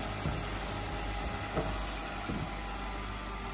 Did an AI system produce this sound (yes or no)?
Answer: no